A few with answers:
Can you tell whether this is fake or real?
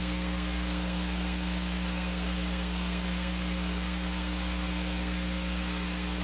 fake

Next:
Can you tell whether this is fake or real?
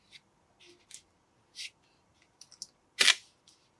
real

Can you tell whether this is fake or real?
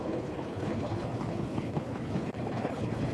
fake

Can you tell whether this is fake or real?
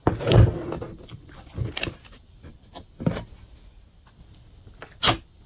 fake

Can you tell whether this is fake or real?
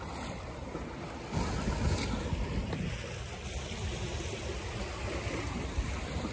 real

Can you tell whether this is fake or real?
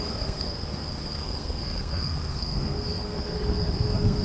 fake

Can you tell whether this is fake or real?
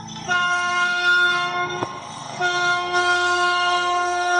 fake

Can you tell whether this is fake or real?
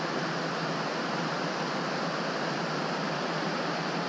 real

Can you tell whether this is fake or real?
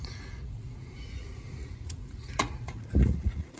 fake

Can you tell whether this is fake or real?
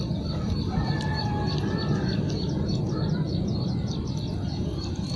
real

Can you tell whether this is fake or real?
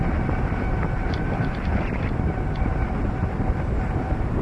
real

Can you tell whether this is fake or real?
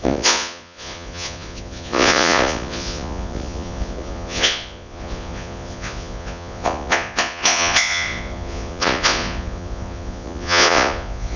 fake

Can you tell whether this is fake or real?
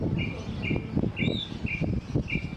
real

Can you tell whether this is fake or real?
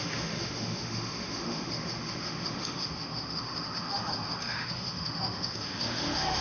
fake